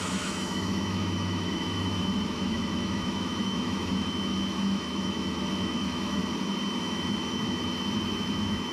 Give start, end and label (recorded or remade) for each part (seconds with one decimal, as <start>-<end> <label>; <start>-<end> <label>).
0.0-6.2 remade; 6.2-6.8 recorded; 6.8-7.4 remade; 7.4-8.1 recorded; 8.1-8.7 remade

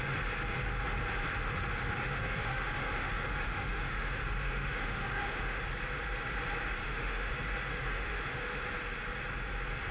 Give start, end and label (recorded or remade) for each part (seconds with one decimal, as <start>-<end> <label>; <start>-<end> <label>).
0.0-2.0 recorded; 2.0-5.6 remade; 5.6-6.8 recorded; 6.8-7.3 remade; 7.3-7.7 recorded; 7.7-8.6 remade; 8.6-9.9 recorded

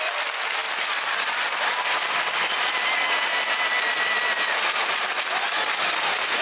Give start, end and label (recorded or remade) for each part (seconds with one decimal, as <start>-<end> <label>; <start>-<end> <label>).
0.0-6.4 recorded